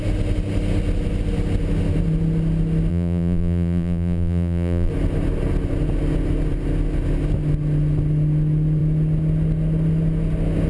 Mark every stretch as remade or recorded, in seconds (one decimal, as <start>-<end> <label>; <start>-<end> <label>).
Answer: 0.0-2.9 recorded; 2.9-4.9 remade; 4.9-10.7 recorded